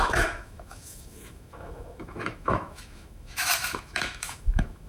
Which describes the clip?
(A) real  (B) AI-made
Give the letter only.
B